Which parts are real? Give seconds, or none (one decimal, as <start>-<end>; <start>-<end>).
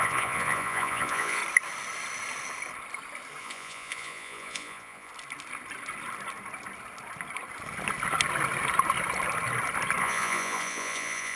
1.4-3.4; 5.1-10.0